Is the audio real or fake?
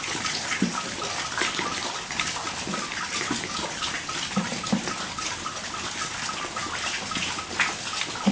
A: real